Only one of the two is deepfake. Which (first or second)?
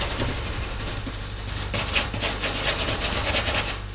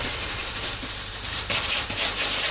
second